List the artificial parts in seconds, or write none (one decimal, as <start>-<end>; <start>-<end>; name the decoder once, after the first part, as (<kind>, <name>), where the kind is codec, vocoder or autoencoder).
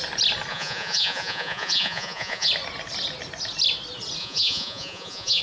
0.5-2.5 (vocoder, Vocos); 4.2-5.4